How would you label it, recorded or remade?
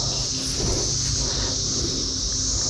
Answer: recorded